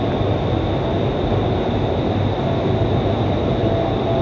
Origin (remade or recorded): recorded